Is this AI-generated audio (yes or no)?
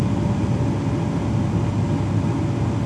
no